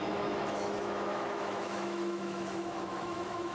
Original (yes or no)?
no